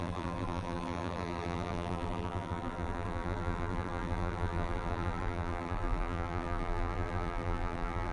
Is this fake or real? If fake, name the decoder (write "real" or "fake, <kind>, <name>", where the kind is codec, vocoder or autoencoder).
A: fake, vocoder, BigVGAN v2